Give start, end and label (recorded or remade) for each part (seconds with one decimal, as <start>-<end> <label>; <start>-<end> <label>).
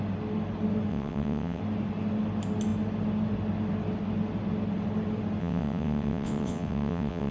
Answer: 0.0-0.9 recorded; 0.9-1.6 remade; 1.6-5.4 recorded; 5.4-7.3 remade